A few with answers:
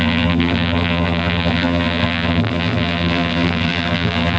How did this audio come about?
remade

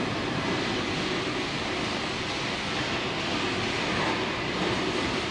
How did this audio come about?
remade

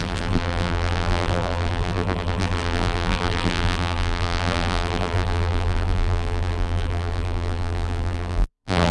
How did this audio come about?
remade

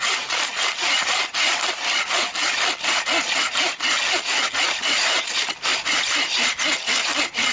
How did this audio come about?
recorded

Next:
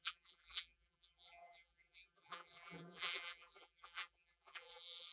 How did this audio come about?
remade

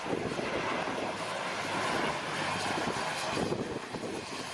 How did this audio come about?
recorded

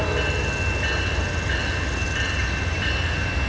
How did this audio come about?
recorded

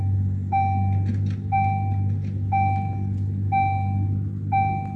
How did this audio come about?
recorded